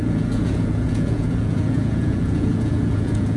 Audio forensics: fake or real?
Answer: fake